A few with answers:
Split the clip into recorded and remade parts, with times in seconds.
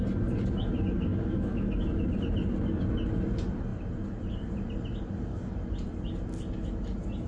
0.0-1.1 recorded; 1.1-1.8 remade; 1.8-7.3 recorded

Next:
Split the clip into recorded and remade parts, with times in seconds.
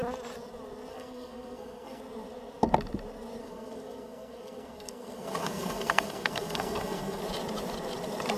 0.0-0.9 recorded; 0.9-2.0 remade; 2.0-3.4 recorded; 3.4-7.2 remade; 7.2-8.4 recorded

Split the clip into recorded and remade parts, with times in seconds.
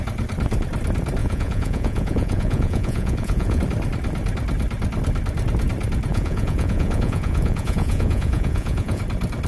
0.0-1.2 recorded; 1.2-3.6 remade; 3.6-6.1 recorded; 6.1-9.0 remade; 9.0-9.5 recorded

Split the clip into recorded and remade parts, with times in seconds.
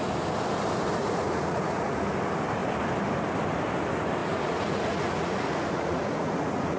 0.0-1.0 recorded; 1.0-2.0 remade; 2.0-4.2 recorded; 4.2-6.8 remade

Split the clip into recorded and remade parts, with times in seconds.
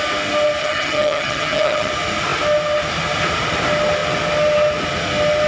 0.0-0.6 recorded; 0.6-1.9 remade; 1.9-5.5 recorded